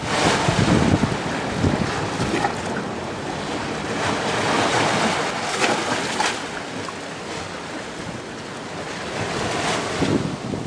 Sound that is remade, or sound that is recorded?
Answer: recorded